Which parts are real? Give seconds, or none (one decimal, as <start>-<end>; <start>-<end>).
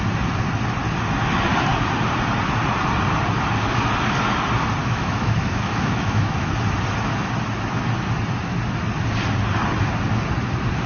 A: 0.0-4.8; 6.5-10.9